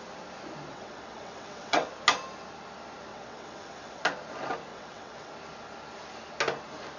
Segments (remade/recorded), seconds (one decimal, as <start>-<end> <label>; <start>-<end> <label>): 0.0-0.7 recorded; 0.7-1.9 remade; 1.9-3.1 recorded; 3.1-4.0 remade; 4.0-4.7 recorded; 4.7-5.3 remade; 5.3-7.0 recorded